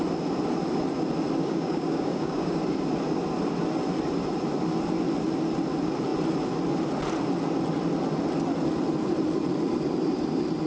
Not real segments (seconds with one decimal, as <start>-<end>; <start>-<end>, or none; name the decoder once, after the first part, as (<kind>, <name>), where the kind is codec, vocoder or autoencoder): 1.4-2.6 (codec, DAC)